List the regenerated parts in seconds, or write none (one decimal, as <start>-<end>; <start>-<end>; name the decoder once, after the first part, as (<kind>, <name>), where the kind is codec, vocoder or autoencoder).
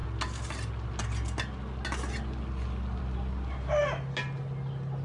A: none